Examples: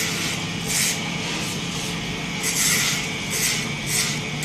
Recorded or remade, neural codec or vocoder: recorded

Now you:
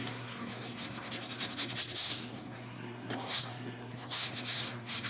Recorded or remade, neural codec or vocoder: remade, codec, SNAC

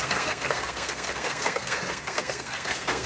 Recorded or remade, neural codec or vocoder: remade, codec, SNAC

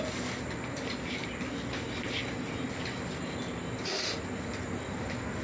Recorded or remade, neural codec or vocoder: recorded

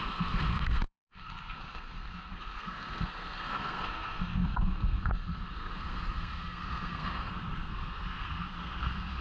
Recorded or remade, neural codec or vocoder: remade, codec, SNAC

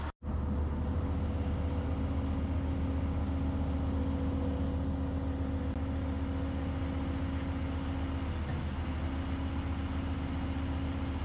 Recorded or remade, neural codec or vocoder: recorded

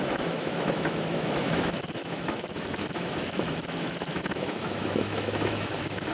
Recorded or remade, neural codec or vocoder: remade, autoencoder, DAC-VAE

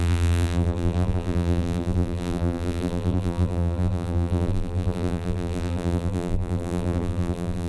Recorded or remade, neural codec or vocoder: remade, vocoder, BigVGAN v2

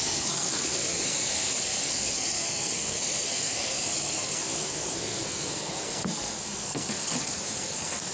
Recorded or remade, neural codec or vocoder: remade, codec, SNAC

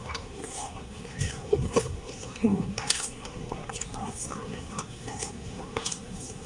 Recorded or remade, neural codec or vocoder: remade, codec, SNAC